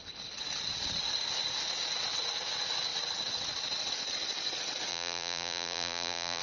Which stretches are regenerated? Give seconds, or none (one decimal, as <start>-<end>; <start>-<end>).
4.9-6.4